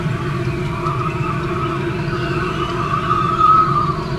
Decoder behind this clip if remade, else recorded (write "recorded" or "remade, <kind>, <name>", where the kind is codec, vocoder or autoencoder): recorded